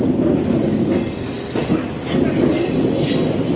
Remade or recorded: recorded